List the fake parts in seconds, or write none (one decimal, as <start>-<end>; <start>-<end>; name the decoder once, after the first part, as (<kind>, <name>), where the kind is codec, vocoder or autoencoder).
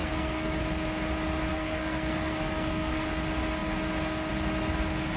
0.0-0.6 (codec, SNAC); 1.5-3.1